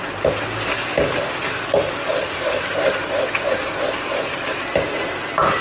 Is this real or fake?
real